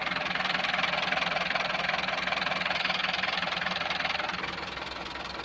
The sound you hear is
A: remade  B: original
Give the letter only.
B